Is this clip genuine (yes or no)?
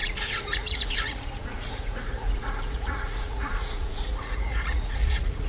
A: no